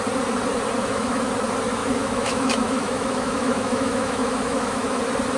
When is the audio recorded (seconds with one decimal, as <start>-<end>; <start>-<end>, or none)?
0.0-0.8; 1.3-1.8; 5.0-5.4